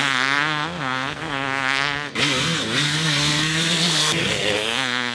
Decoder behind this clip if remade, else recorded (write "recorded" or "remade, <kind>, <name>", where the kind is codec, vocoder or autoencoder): remade, codec, SNAC